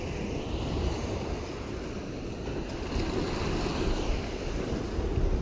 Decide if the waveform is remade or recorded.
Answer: recorded